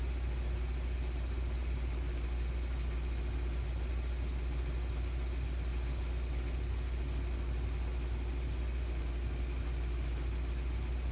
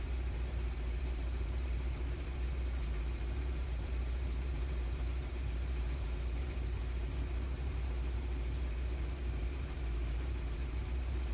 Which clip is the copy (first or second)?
second